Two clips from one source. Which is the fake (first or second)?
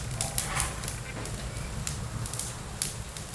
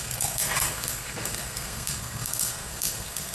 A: second